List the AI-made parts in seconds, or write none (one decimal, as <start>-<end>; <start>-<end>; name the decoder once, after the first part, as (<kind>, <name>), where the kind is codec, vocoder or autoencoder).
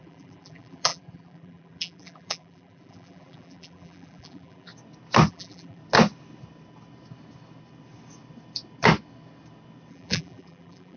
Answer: 0.0-4.7 (vocoder, BigVGAN v2); 5.3-5.8; 9.9-11.0